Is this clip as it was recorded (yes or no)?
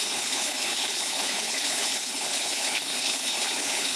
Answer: no